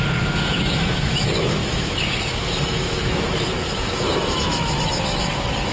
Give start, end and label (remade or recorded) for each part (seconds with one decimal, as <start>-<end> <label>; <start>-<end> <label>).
0.0-5.7 remade